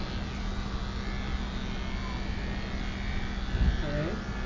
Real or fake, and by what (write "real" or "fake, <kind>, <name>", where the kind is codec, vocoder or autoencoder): real